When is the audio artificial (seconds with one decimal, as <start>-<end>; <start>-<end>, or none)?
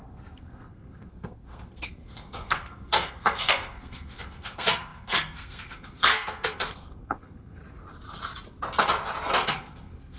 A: 0.0-7.6; 9.5-10.2